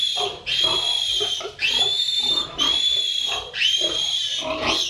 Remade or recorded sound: remade